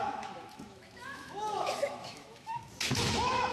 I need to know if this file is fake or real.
fake